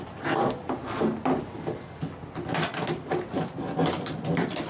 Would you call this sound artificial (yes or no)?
yes